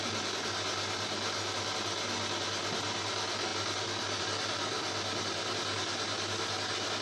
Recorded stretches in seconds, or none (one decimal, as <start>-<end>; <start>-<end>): 0.0-7.0